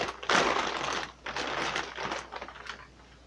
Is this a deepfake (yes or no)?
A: no